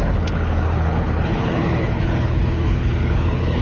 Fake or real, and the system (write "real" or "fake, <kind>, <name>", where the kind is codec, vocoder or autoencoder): fake, codec, HILCodec